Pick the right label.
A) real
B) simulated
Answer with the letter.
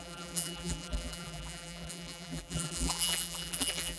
B